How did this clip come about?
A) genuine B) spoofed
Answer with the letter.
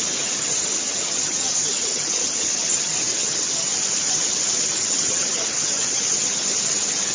B